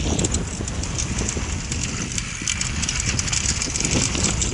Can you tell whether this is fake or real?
real